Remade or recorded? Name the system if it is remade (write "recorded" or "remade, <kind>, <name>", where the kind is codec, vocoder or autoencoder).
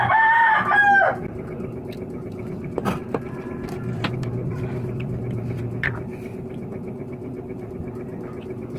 recorded